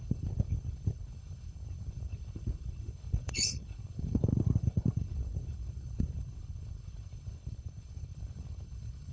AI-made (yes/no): yes